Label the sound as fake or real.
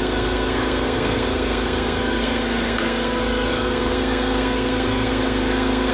fake